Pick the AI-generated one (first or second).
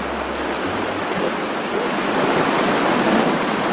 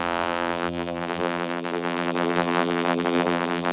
second